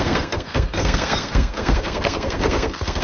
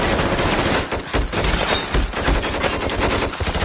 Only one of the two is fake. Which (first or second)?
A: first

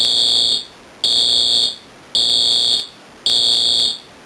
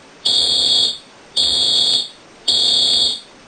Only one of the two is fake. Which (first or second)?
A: second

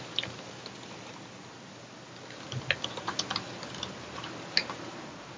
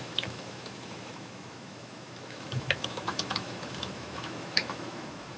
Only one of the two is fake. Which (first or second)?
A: second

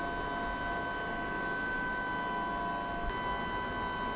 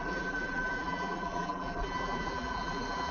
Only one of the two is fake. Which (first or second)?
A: second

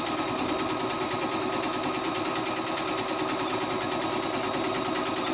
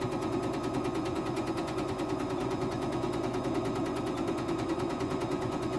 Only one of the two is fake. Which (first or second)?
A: second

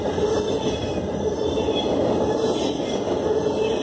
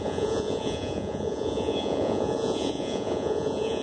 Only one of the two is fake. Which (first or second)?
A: second